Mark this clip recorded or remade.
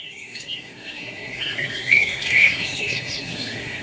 remade